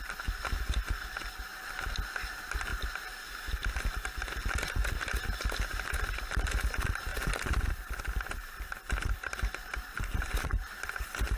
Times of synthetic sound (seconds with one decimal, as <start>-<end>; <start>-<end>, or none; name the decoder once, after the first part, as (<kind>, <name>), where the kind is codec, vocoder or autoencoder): 7.1-11.0 (vocoder, BigVGAN v2)

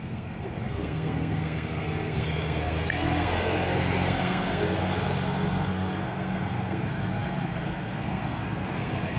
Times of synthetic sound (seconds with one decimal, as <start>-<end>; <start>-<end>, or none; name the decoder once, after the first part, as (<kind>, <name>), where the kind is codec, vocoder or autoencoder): 0.0-9.2 (codec, SNAC)

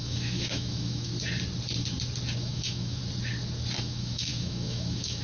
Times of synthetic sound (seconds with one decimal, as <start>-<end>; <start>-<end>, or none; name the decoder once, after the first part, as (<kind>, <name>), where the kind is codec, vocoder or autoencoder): 0.0-1.1 (autoencoder, DAC-VAE); 2.4-3.0; 3.8-5.2

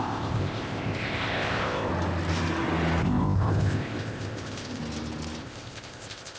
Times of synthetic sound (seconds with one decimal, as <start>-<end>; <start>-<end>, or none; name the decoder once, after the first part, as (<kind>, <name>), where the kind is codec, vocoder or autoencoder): 0.0-1.9 (codec, ZipCodec); 3.0-4.8; 5.4-6.4